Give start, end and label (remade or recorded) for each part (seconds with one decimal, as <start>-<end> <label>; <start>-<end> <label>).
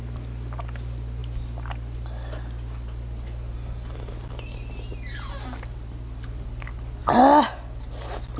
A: 0.0-8.4 recorded